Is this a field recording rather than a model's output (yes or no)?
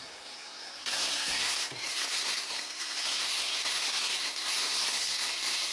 no